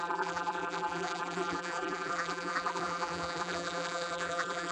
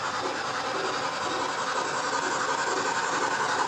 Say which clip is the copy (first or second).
first